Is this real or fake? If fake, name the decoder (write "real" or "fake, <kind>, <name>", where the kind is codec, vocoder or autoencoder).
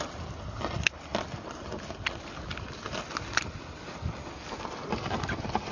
real